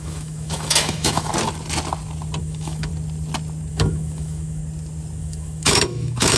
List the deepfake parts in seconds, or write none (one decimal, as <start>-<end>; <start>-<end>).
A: 0.0-1.3; 2.4-2.9; 3.7-4.6; 5.2-6.4